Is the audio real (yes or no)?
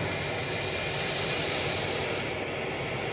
yes